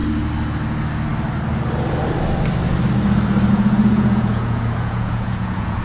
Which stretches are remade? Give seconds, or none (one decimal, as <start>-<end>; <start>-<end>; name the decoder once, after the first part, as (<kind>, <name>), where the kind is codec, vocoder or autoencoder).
3.5-5.8 (vocoder, Vocos)

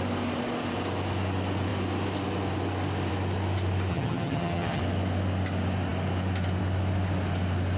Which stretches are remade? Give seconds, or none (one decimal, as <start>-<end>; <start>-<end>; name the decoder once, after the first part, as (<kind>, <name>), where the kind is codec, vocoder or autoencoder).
3.9-4.8 (vocoder, HiFi-GAN)